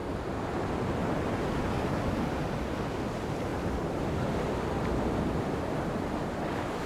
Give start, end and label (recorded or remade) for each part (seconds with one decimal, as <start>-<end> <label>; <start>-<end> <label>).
0.0-1.0 recorded; 1.0-2.1 remade; 2.1-6.9 recorded